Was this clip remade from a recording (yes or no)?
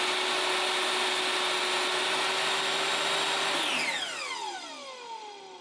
no